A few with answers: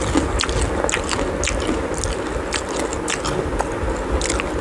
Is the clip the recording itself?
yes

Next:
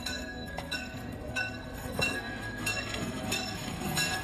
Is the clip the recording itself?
no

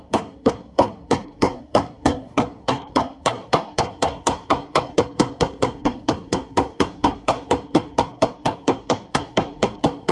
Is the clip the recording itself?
no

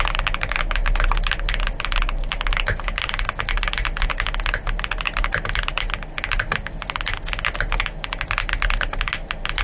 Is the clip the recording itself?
yes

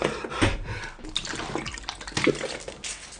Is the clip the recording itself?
yes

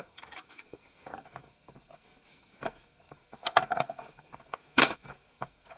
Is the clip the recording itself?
no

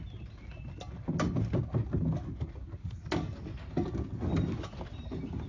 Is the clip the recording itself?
yes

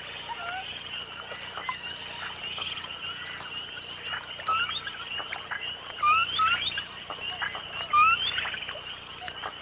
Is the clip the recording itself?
yes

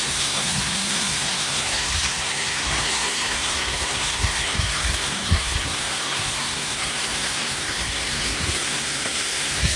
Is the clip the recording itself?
no